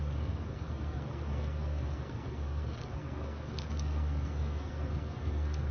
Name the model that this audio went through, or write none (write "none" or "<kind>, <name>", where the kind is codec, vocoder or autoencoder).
codec, SNAC